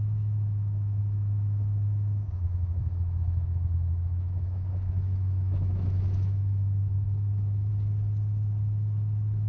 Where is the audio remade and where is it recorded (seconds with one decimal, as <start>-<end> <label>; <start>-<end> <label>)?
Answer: 0.0-7.7 remade; 7.7-9.5 recorded